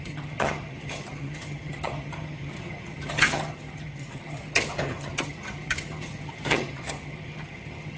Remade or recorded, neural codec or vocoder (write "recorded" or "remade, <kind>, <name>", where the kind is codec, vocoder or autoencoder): remade, vocoder, HiFi-GAN